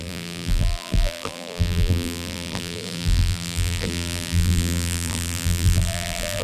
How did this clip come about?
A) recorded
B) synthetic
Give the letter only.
B